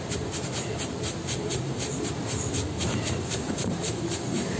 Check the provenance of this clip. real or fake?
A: fake